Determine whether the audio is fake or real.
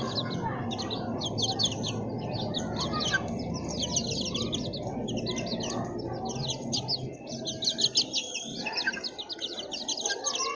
real